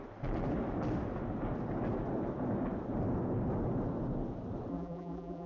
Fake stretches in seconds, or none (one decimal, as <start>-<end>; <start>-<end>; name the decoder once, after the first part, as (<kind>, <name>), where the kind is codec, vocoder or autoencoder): 4.7-5.5 (vocoder, BigVGAN v2)